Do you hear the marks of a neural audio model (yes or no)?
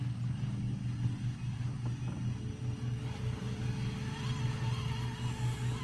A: no